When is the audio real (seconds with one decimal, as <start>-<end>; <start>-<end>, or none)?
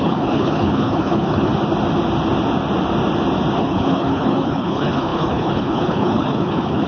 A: 1.5-3.6